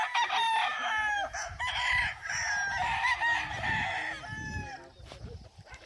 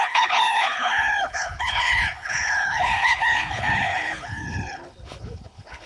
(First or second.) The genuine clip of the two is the first